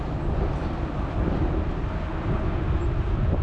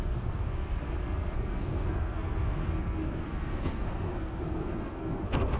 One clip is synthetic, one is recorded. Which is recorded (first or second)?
first